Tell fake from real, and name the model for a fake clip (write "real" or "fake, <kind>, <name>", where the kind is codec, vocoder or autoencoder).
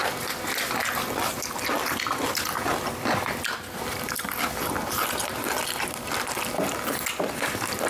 real